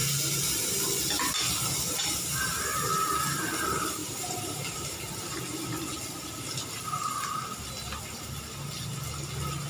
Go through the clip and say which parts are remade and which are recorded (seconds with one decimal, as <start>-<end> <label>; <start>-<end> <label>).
0.0-4.0 recorded; 4.0-7.7 remade; 7.7-9.7 recorded